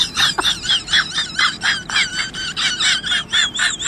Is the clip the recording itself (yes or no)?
yes